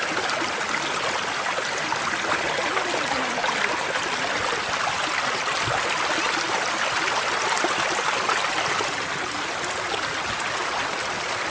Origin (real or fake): real